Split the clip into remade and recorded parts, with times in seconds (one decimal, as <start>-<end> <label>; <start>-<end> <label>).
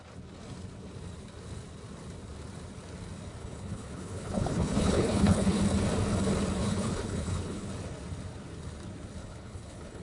0.0-3.4 recorded; 3.4-5.6 remade; 5.6-6.6 recorded; 6.6-7.7 remade; 7.7-9.2 recorded; 9.2-10.0 remade